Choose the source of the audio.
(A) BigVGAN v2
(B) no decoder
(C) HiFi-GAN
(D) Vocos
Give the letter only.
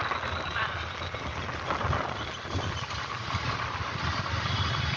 B